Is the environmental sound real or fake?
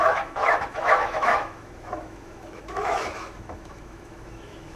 fake